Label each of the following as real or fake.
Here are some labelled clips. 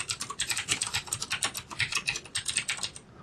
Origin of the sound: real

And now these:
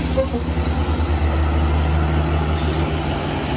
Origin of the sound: real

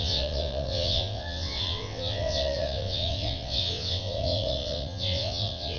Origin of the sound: fake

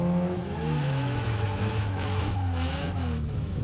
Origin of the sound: fake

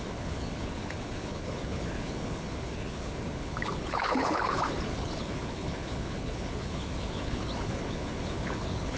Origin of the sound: fake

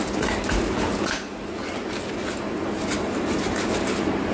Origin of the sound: real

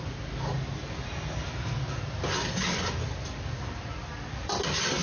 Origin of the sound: real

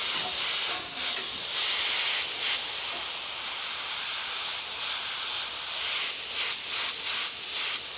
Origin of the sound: real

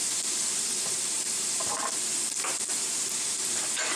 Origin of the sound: fake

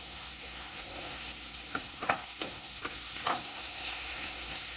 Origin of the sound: fake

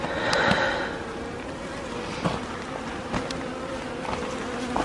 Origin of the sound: real